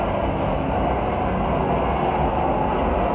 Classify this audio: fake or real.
real